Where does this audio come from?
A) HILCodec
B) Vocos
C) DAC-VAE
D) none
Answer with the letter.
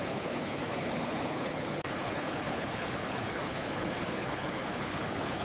A